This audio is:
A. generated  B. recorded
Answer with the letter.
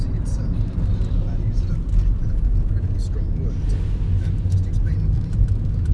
B